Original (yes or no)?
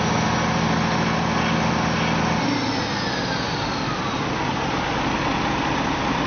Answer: yes